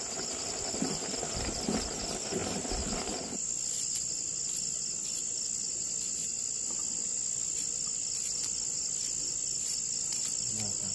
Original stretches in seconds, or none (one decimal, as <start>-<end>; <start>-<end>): 0.0-10.9

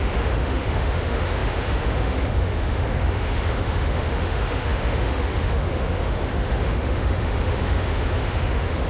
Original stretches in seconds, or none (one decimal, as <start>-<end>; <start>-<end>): none

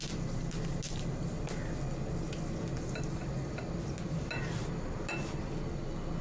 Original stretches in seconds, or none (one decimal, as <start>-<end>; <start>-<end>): 0.0-6.2

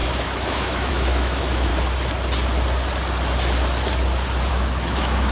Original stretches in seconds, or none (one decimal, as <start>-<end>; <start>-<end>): 1.7-4.5

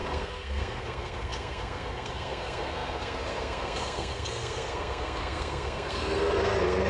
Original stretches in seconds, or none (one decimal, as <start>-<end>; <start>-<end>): none